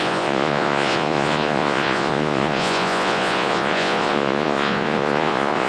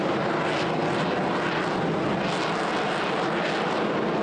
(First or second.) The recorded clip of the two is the second